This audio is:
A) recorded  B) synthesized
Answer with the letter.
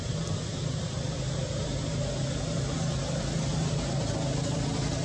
A